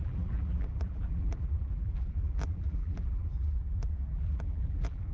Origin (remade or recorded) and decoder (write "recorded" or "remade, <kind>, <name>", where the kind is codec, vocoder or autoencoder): remade, vocoder, BigVGAN v2